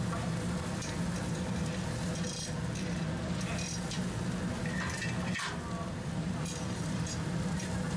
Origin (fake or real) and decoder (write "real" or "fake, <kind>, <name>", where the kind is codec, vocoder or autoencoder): real